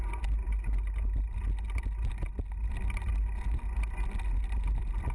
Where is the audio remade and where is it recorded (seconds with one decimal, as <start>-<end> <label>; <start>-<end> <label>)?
0.0-5.1 recorded